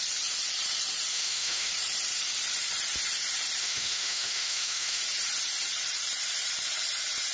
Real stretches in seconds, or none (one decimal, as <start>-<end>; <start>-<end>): 0.0-1.1; 1.7-3.6; 5.0-7.3